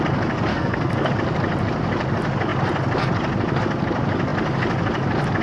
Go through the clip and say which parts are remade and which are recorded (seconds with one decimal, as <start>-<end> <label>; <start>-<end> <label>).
0.0-0.5 recorded; 0.5-1.1 remade; 1.1-5.4 recorded